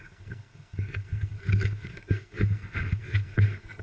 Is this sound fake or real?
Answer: fake